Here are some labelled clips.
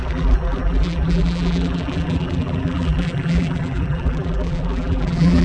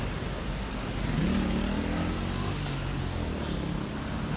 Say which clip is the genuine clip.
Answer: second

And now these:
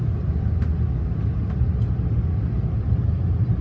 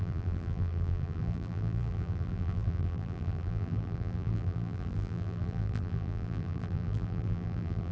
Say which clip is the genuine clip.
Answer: first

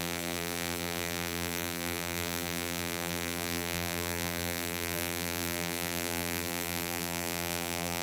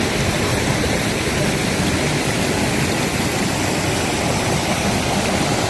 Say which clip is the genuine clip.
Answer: second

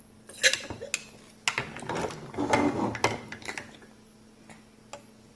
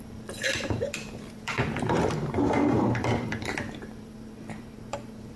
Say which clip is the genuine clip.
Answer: first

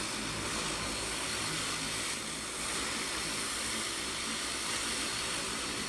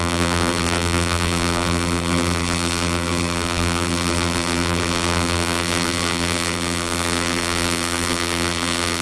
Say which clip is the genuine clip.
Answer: first